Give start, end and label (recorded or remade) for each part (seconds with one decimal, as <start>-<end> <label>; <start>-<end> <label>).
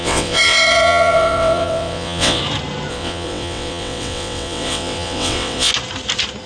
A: 0.0-2.4 remade; 2.4-2.9 recorded; 2.9-5.7 remade; 5.7-6.5 recorded